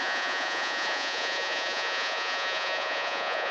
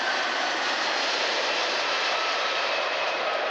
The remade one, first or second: first